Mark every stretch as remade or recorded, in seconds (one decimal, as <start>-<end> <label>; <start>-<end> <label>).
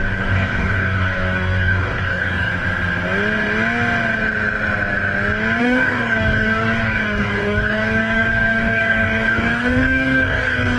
0.0-2.5 remade; 2.5-5.6 recorded; 5.6-10.8 remade